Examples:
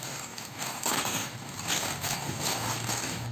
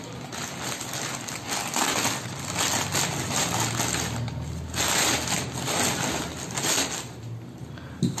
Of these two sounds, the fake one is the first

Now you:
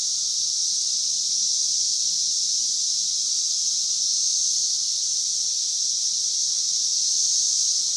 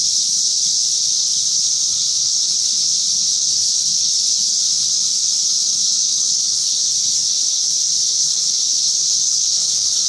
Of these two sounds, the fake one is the second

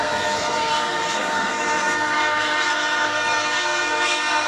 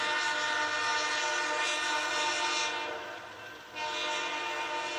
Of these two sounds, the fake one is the first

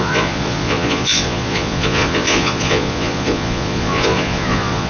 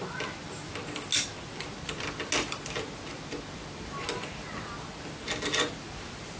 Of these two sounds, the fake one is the first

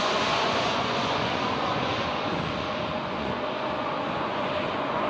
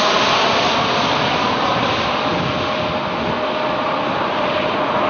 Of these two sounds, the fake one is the first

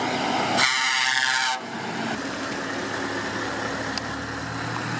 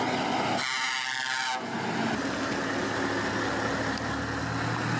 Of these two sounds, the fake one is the first